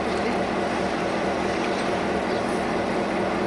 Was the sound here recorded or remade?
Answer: remade